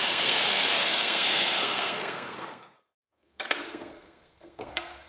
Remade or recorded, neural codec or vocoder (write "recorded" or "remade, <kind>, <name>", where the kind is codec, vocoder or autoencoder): remade, codec, SNAC